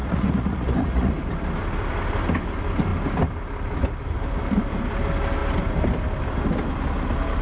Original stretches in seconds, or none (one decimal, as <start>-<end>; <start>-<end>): 1.1-7.4